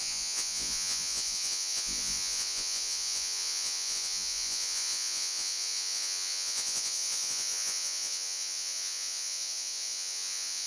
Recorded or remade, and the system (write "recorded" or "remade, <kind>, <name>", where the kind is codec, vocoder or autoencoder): remade, vocoder, Vocos